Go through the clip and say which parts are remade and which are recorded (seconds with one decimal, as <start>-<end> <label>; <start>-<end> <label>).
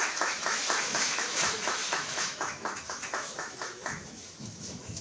0.0-5.0 remade